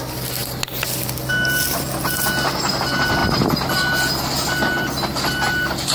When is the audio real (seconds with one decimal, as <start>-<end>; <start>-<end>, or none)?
0.0-5.9